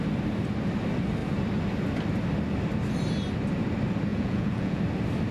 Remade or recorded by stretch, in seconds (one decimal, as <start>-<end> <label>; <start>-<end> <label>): 0.0-4.1 recorded; 4.1-4.8 remade; 4.8-5.3 recorded